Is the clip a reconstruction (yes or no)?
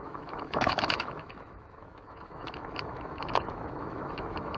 yes